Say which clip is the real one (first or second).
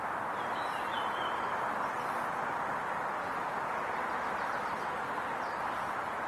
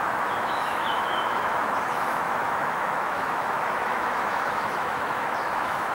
first